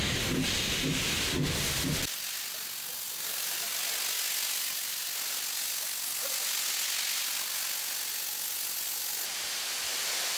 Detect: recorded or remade recorded